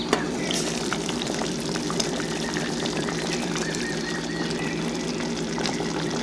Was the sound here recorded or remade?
remade